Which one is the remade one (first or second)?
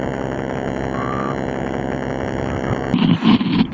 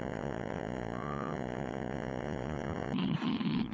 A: second